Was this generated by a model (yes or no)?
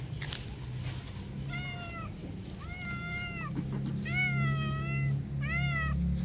no